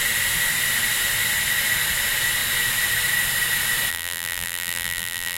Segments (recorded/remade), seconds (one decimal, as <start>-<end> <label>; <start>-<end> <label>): 0.0-3.9 recorded; 3.9-5.4 remade